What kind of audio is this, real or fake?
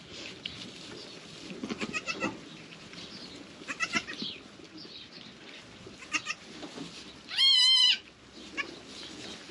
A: real